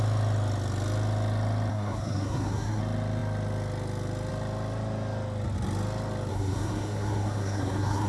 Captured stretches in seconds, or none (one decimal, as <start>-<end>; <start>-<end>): 0.0-1.7; 2.8-6.3